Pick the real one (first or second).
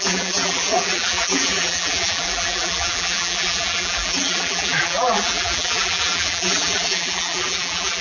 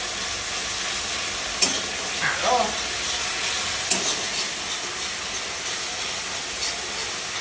second